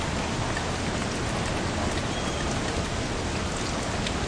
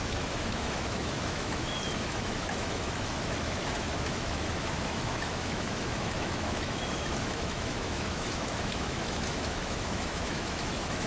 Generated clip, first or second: second